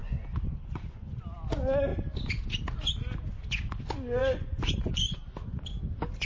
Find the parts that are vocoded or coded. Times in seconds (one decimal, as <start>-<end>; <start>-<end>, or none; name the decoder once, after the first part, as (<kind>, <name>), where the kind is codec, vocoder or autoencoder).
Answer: 0.0-1.2 (vocoder, Vocos); 4.2-4.7